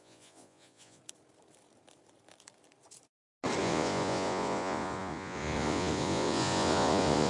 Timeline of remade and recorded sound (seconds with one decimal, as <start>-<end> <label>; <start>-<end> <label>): 0.0-1.0 remade; 1.0-3.6 recorded; 3.6-7.3 remade